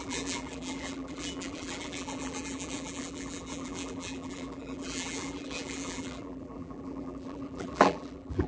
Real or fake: fake